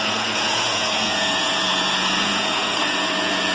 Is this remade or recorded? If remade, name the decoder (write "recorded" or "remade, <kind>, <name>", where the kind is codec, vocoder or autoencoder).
remade, vocoder, Vocos